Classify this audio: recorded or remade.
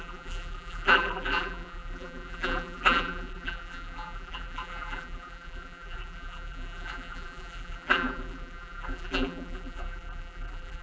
remade